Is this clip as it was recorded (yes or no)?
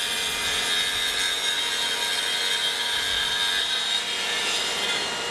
yes